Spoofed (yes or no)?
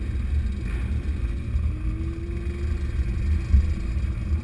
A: no